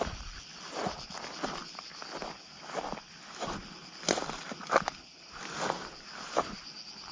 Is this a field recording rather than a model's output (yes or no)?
yes